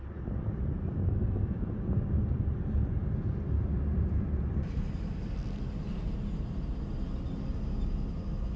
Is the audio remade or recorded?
recorded